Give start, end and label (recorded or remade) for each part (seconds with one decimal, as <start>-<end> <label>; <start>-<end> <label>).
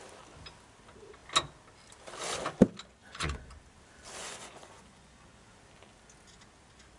0.0-3.0 recorded; 3.0-3.5 remade; 3.5-4.2 recorded; 4.2-5.6 remade; 5.6-7.0 recorded